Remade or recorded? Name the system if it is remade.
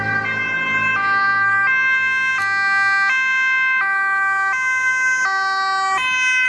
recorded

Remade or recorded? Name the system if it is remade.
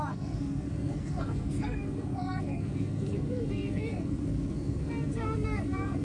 remade, codec, SNAC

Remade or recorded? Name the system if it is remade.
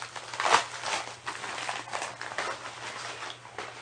recorded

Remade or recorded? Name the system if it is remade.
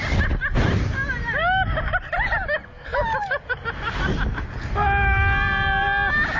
recorded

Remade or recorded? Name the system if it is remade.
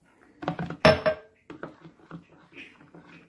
recorded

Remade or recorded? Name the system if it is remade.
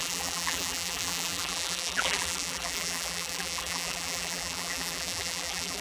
remade, vocoder, BigVGAN v2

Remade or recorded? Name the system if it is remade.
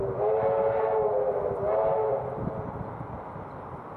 recorded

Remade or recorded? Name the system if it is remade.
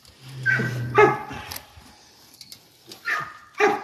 recorded